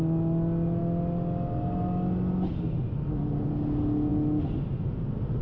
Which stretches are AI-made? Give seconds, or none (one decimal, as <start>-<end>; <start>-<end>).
none